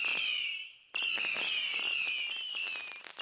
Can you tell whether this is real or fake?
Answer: real